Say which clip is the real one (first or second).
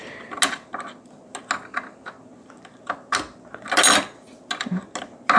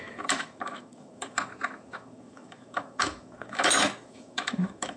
first